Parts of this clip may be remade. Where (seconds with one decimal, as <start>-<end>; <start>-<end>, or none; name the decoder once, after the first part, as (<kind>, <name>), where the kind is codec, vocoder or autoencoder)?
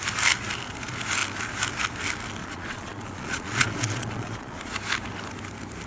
2.4-4.7 (vocoder, Vocos)